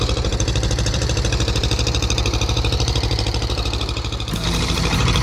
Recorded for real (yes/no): no